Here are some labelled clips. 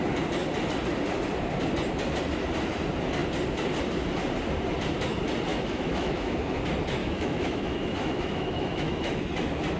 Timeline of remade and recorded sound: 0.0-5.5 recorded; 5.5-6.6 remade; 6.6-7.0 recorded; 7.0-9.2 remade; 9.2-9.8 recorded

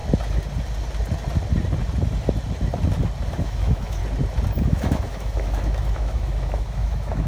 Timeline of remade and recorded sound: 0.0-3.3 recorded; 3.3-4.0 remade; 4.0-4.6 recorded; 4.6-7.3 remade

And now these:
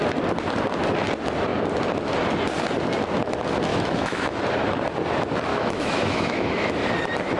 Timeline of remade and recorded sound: 0.0-3.7 recorded; 3.7-4.4 remade; 4.4-5.5 recorded; 5.5-6.7 remade; 6.7-7.4 recorded

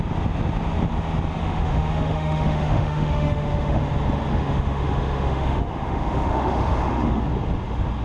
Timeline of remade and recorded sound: 0.0-1.4 recorded; 1.4-3.8 remade; 3.8-4.3 recorded; 4.3-7.2 remade; 7.2-8.0 recorded

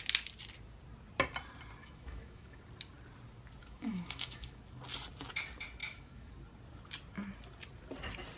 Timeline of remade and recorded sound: 0.0-1.8 recorded; 1.8-2.6 remade; 2.6-3.6 recorded; 3.6-4.6 remade; 4.6-5.8 recorded; 5.8-6.3 remade; 6.3-8.4 recorded